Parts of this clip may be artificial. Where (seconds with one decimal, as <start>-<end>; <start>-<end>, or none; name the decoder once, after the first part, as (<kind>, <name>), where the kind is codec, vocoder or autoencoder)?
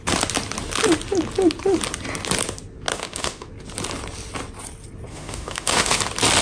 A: 2.9-3.5 (autoencoder, DAC-VAE); 5.1-6.0